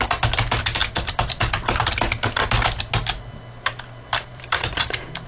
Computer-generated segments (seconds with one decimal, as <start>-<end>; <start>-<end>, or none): 0.8-1.5; 4.3-5.3